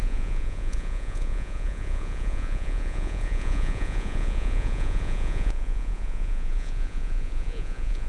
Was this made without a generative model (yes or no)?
no